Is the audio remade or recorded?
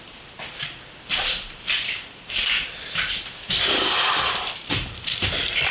remade